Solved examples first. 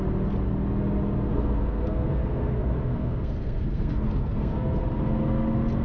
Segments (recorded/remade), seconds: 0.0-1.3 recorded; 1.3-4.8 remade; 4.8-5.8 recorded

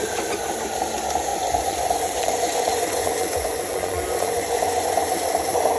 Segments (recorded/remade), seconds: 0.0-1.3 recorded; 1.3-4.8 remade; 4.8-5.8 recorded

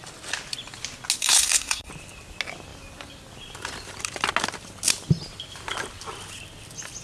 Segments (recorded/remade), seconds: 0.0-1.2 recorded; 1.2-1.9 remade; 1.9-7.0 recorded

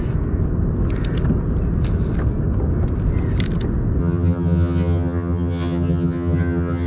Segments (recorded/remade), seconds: 0.0-4.0 recorded; 4.0-6.9 remade

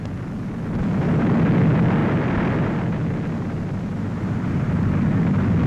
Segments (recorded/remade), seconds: 0.0-5.7 recorded